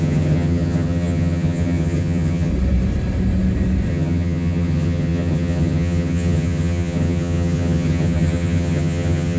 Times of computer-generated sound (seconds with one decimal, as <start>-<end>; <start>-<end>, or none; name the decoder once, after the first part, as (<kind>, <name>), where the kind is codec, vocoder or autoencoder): 0.0-2.5 (vocoder, HiFi-GAN); 3.9-9.4